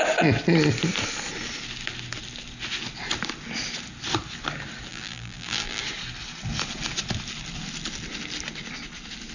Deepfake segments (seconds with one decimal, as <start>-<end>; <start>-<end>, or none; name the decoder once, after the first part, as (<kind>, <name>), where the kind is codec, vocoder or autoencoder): 4.9-5.8 (vocoder, BigVGAN v2)